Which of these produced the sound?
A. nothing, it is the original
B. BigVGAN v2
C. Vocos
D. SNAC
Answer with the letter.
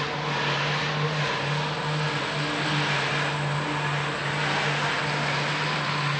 A